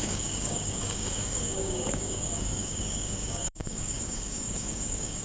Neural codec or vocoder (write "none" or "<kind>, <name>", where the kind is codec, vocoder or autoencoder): codec, DAC